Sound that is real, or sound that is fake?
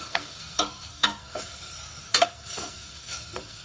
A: fake